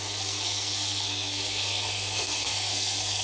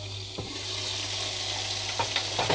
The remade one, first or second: first